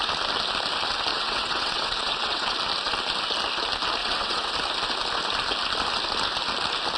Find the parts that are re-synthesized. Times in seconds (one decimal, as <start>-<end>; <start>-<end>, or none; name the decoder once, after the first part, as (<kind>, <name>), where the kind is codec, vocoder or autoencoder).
1.1-2.5 (vocoder, WaveNeXt); 4.0-4.5